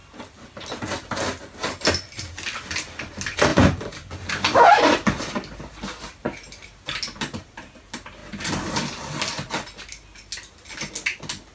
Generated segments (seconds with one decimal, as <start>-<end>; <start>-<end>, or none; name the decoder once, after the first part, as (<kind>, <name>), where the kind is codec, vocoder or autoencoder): none